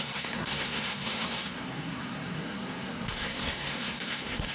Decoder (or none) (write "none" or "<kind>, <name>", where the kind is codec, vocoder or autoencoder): codec, SNAC